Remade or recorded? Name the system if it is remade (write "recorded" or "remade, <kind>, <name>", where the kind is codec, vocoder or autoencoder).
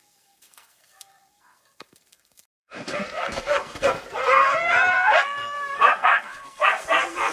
remade, codec, SNAC